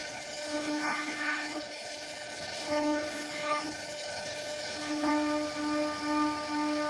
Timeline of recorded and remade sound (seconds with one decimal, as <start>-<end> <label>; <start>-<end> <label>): 0.0-5.1 remade; 5.1-6.9 recorded